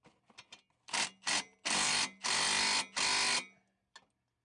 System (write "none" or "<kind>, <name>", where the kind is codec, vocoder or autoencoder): none